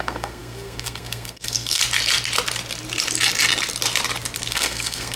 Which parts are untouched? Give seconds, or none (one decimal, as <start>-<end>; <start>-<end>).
1.8-4.5